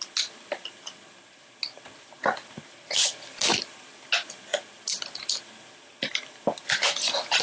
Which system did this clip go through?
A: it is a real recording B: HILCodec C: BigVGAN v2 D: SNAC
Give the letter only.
A